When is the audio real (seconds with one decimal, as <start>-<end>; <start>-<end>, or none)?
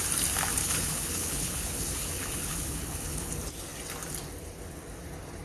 0.0-0.6; 3.3-5.4